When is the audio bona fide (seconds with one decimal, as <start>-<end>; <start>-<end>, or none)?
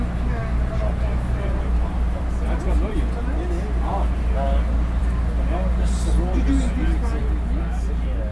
0.0-8.3